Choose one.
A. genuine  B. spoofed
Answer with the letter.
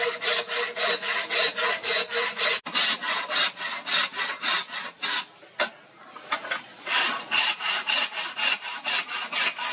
A